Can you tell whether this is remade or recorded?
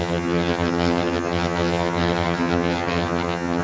remade